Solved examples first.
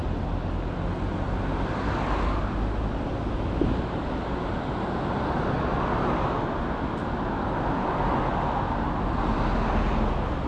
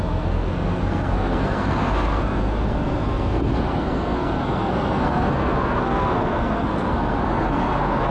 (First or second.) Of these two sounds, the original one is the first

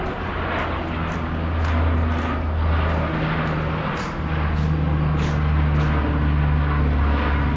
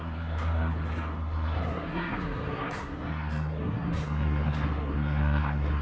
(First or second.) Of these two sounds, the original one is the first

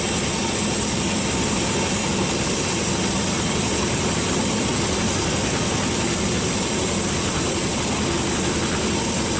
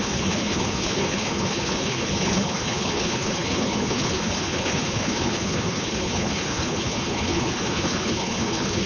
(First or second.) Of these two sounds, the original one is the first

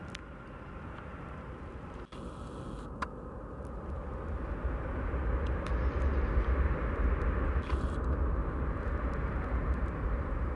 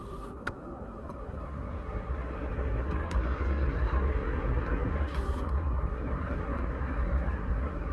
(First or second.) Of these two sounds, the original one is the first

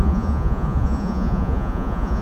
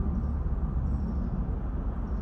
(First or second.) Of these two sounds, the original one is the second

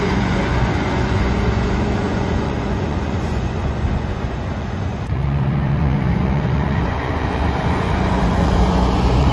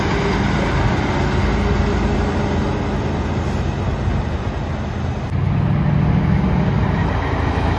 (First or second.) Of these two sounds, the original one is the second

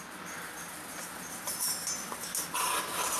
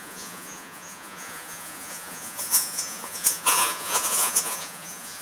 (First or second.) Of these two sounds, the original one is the first